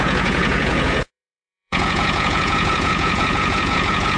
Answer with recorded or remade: remade